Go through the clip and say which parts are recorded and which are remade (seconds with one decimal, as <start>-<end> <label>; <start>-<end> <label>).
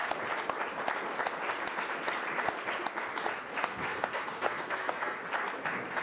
0.0-3.6 recorded; 3.6-5.2 remade; 5.2-6.0 recorded